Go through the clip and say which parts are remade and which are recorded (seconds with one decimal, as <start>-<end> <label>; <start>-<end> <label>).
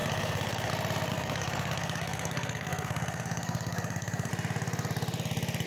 0.0-0.7 remade; 0.7-1.1 recorded; 1.1-4.3 remade; 4.3-5.7 recorded